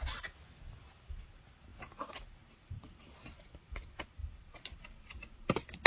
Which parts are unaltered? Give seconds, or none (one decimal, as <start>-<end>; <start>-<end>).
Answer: 0.0-5.9

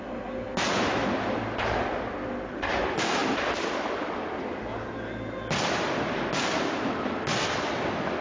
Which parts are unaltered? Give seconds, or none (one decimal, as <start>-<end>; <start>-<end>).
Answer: 0.0-8.2

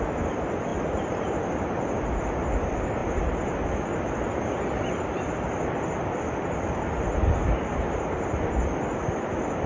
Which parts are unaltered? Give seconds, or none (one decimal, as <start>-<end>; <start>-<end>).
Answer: 0.0-9.7

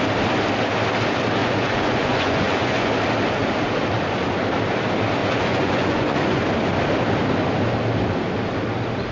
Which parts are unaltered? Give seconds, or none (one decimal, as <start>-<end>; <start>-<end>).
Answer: 0.0-1.4; 2.9-5.2; 6.4-9.1

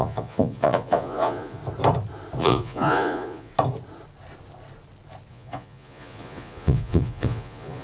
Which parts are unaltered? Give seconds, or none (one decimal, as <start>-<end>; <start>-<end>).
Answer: 1.6-2.4; 3.5-5.3

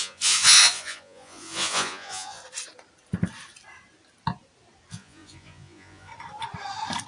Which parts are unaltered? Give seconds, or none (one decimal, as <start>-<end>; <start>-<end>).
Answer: 2.4-4.9; 6.1-7.1

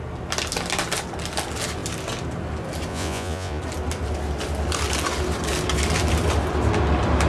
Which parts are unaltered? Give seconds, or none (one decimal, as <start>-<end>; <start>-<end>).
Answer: 0.0-2.9; 3.6-7.3